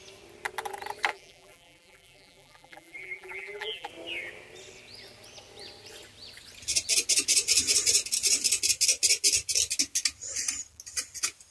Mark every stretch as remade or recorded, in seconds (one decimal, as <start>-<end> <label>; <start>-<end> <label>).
0.0-1.1 recorded; 1.1-3.9 remade; 3.9-11.5 recorded